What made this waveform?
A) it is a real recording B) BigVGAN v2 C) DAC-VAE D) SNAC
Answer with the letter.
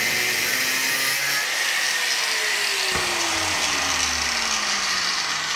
A